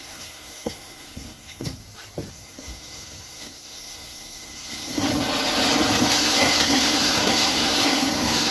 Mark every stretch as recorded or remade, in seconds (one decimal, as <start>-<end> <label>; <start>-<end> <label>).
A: 0.0-1.8 remade; 1.8-2.3 recorded; 2.3-5.1 remade; 5.1-6.2 recorded; 6.2-8.5 remade